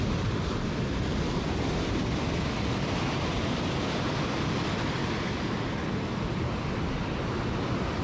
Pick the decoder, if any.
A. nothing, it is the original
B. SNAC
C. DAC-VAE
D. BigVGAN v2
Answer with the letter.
A